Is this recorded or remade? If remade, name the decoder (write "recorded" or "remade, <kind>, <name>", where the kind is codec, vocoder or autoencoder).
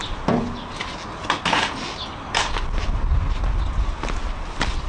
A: recorded